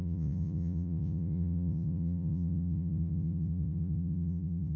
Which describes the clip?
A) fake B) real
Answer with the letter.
A